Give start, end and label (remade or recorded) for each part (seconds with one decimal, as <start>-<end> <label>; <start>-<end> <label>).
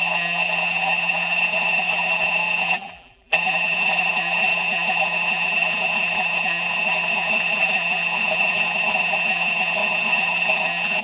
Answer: 0.0-11.0 remade